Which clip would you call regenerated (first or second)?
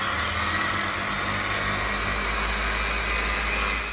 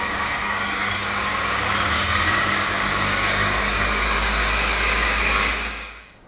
second